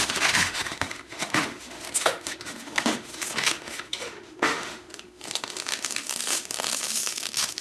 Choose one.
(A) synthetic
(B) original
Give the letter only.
A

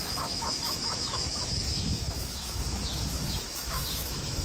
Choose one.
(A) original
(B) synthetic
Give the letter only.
B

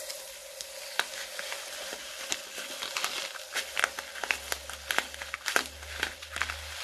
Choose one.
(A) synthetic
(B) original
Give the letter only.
B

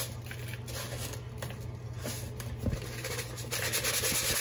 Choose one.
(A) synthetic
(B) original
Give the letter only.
B